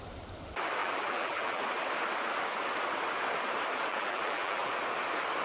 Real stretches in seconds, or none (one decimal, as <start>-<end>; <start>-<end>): 0.0-0.8; 1.6-3.9; 4.7-5.4